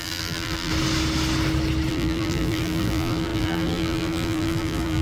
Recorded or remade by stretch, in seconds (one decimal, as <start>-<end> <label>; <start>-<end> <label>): 0.0-0.7 remade; 0.7-1.9 recorded; 1.9-5.0 remade